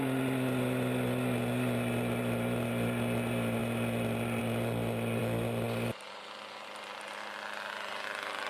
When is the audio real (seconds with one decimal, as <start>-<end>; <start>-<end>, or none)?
0.0-8.5